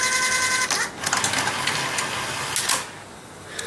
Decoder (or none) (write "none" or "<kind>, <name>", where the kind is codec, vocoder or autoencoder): none